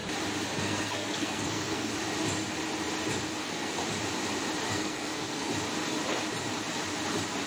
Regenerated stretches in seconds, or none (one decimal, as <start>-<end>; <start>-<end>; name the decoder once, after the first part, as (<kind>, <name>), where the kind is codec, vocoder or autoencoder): 0.6-1.9 (codec, SNAC); 3.4-3.8; 4.7-5.5

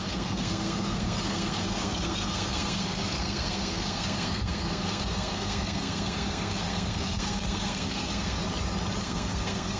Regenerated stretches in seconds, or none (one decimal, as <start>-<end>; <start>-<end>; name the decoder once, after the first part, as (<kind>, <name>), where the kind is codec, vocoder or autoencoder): 0.0-8.4 (codec, SNAC); 9.0-9.8